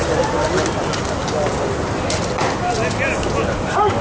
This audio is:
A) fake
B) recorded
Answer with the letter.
B